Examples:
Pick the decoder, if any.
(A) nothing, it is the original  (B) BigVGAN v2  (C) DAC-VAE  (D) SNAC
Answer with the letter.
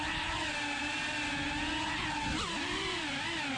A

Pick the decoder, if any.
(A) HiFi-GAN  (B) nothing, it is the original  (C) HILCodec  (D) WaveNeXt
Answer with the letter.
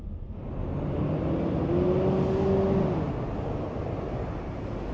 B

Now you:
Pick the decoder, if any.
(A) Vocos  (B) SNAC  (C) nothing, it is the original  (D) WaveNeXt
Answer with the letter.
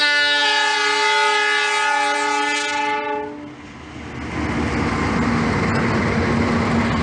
C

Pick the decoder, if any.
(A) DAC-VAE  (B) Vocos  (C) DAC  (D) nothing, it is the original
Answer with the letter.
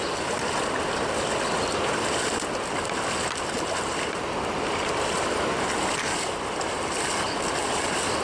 D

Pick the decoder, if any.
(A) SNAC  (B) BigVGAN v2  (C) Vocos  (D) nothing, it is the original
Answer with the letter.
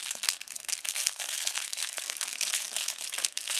A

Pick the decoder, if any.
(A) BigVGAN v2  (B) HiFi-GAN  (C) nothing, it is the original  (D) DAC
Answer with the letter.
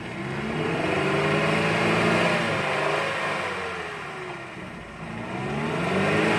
C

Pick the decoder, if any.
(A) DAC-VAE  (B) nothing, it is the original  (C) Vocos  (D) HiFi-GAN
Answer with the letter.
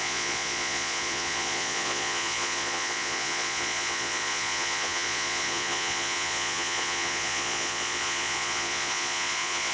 C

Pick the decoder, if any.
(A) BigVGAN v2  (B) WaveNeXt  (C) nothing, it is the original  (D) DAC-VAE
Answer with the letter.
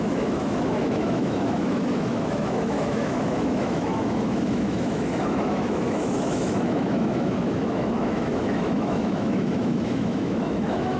D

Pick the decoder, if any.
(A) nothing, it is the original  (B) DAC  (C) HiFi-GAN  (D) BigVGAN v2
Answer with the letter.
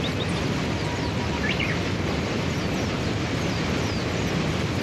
A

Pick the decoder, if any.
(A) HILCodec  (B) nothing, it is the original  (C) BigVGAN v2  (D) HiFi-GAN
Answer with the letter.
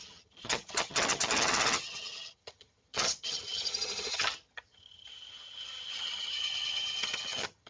D